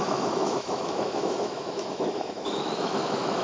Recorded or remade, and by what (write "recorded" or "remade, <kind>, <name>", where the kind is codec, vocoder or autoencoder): remade, autoencoder, DAC-VAE